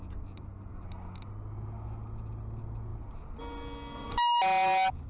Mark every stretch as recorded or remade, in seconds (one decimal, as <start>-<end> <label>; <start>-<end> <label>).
0.0-5.1 recorded